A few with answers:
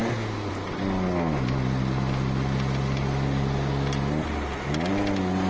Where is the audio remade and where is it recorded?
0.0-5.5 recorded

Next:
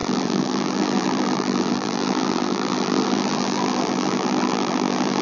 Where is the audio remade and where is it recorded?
0.0-5.2 remade

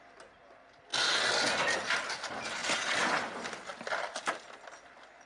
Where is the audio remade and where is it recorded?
0.0-5.3 recorded

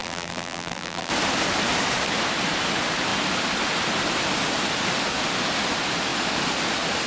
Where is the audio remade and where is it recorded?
0.0-1.1 remade; 1.1-7.1 recorded

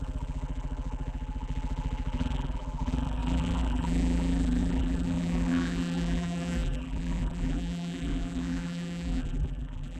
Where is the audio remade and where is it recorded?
0.0-10.0 remade